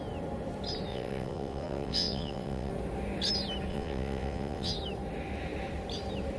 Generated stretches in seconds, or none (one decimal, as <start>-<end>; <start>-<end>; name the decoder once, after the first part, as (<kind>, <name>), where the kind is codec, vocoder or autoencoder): 0.9-2.7 (vocoder, WaveNeXt); 3.7-4.7